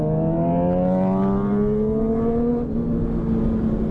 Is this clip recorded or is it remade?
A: recorded